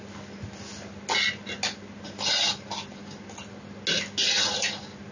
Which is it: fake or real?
real